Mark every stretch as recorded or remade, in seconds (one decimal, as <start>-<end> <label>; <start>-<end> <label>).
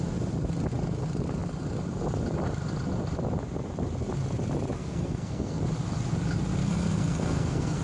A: 0.0-4.8 recorded; 4.8-5.6 remade; 5.6-6.6 recorded; 6.6-7.8 remade